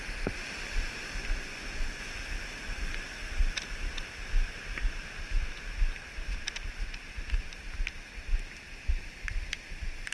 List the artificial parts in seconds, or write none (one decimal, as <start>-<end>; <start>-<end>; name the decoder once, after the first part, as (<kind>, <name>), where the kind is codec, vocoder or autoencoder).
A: 1.2-2.0 (vocoder, Vocos)